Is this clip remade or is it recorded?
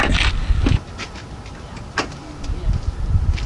recorded